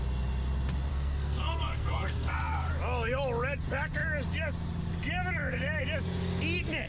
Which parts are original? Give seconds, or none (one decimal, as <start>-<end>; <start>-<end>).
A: 0.0-0.9; 2.7-6.9